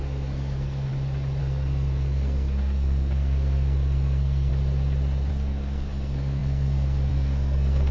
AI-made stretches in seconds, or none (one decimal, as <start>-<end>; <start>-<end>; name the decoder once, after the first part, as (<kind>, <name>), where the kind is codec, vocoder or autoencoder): 0.0-0.9 (codec, SNAC); 1.4-4.5; 5.3-7.9